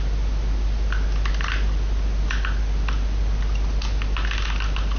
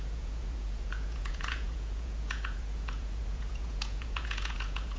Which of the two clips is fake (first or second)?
second